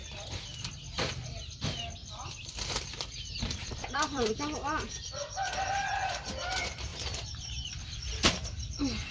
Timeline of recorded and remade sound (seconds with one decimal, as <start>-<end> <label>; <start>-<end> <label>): 0.0-2.0 recorded; 2.0-4.3 remade; 4.3-6.9 recorded; 6.9-8.3 remade; 8.3-9.1 recorded